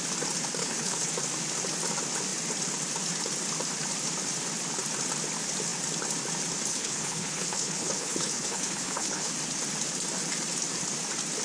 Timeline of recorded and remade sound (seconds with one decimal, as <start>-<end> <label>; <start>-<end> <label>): 0.0-0.6 recorded; 0.6-1.1 remade; 1.1-6.7 recorded; 6.7-9.3 remade; 9.3-11.4 recorded